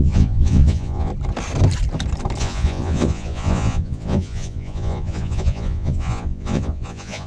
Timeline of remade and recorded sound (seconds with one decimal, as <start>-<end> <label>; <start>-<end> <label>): 0.0-1.1 remade; 1.1-2.4 recorded; 2.4-7.3 remade